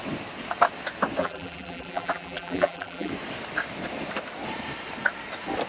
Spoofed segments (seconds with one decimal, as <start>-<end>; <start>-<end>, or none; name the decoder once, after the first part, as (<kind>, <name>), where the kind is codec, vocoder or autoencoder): 1.2-3.1 (vocoder, BigVGAN v2)

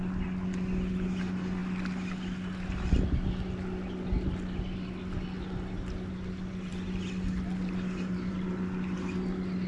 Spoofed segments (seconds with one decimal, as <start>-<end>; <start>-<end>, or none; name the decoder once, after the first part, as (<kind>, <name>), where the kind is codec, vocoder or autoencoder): none